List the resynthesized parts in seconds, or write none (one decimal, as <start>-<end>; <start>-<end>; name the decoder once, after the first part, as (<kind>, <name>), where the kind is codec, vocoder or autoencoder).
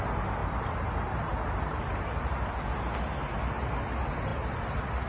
none